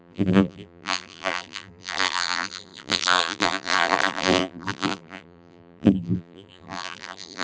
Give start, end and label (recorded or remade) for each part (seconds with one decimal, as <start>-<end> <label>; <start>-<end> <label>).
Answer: 0.0-7.4 remade